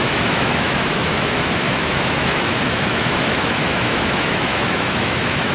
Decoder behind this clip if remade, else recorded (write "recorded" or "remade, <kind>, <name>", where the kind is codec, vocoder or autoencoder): remade, autoencoder, DAC-VAE